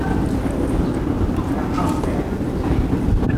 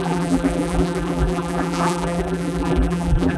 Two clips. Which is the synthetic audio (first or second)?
second